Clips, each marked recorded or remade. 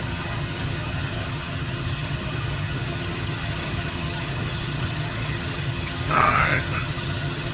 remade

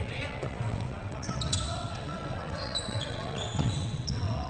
remade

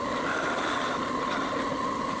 recorded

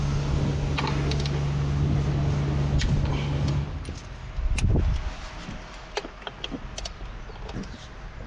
recorded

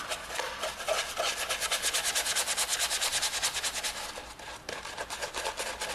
recorded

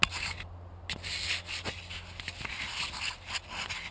recorded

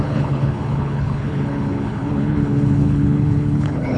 remade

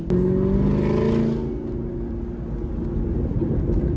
recorded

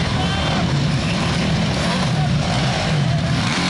remade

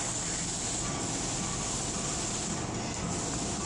recorded